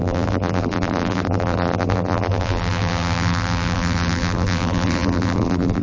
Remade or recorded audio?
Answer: remade